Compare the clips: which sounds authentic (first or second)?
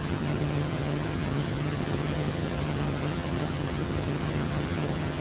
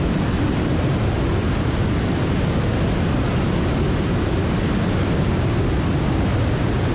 second